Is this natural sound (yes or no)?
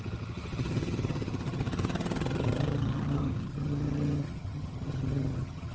no